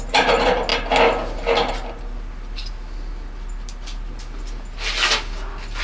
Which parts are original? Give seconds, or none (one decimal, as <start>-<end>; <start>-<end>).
0.0-5.8